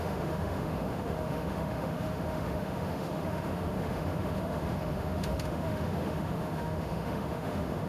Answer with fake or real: fake